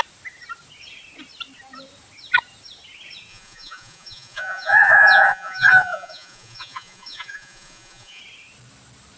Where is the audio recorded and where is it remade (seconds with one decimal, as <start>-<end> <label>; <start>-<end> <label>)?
0.0-3.3 recorded; 3.3-8.2 remade; 8.2-9.2 recorded